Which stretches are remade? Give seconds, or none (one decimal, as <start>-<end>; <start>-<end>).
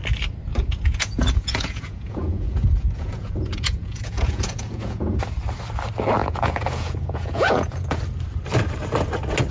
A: 0.5-5.2; 6.2-8.0